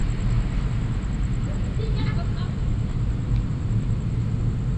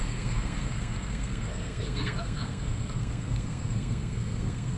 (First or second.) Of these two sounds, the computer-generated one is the second